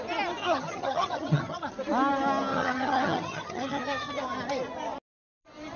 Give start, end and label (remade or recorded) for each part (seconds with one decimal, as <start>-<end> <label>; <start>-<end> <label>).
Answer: 0.0-0.4 recorded; 0.4-1.7 remade; 1.7-2.5 recorded; 2.5-4.1 remade; 4.1-5.8 recorded